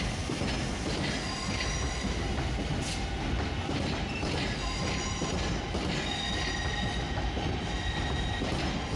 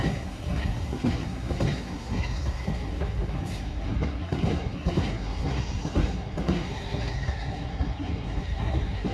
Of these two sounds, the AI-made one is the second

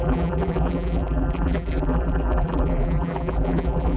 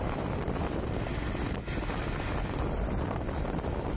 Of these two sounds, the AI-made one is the first